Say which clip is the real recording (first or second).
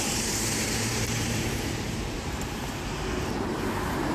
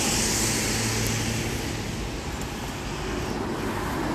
second